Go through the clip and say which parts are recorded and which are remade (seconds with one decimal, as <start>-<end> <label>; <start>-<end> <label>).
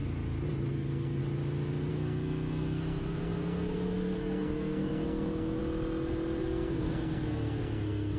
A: 0.0-0.7 recorded; 0.7-1.2 remade; 1.2-1.9 recorded; 1.9-5.6 remade; 5.6-6.4 recorded; 6.4-8.2 remade